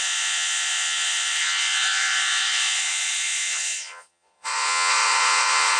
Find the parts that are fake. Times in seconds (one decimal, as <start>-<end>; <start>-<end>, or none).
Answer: 0.0-5.8